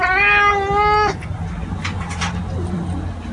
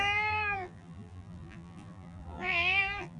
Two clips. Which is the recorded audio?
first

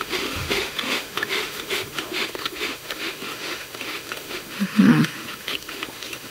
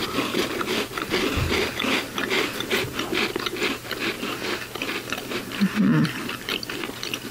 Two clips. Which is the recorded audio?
second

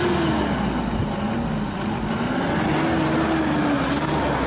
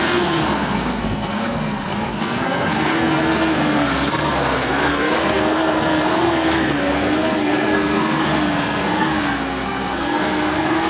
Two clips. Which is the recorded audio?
first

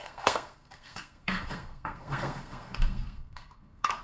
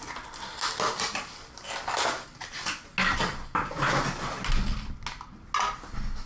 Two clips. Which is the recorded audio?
second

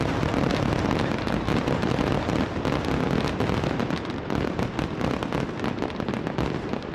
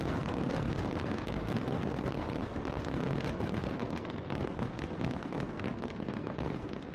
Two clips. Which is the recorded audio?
first